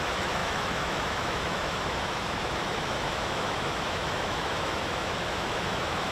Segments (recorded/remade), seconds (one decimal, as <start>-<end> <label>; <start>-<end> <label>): 0.0-6.1 remade